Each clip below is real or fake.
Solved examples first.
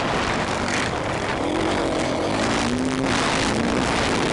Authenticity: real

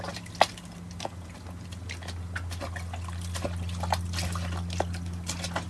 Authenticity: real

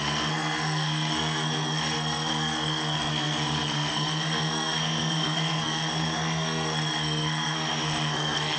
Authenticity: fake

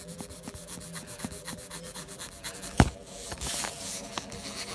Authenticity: fake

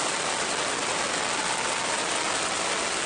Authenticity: real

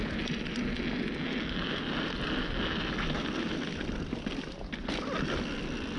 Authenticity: real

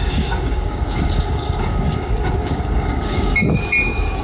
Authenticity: fake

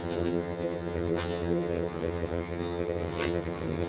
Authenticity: fake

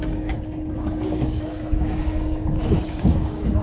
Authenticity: fake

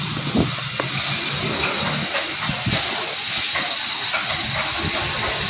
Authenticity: real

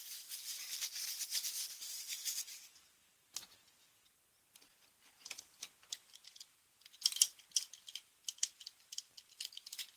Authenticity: real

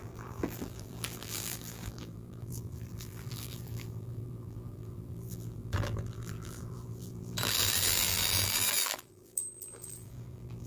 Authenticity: fake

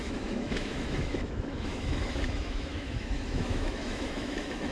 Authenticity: fake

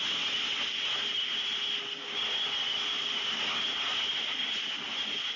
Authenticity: real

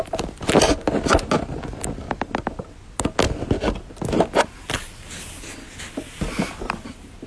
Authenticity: real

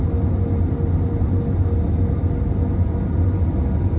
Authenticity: real